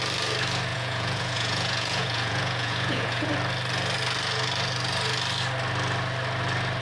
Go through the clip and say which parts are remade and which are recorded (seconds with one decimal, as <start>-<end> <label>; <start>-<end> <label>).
0.0-0.7 recorded; 0.7-3.3 remade; 3.3-6.8 recorded